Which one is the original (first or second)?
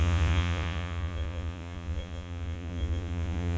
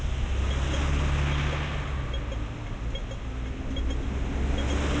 second